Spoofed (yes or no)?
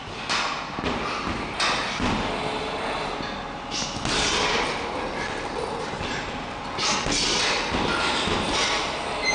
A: no